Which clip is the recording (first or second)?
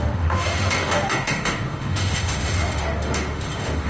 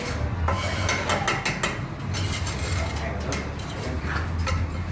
second